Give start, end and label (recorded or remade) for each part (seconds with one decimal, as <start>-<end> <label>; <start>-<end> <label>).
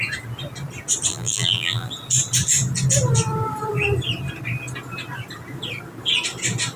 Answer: 0.0-1.1 recorded; 1.1-1.9 remade; 1.9-6.8 recorded